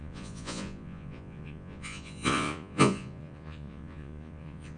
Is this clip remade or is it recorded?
remade